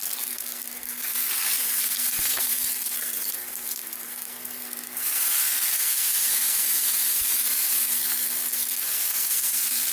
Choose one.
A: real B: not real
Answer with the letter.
B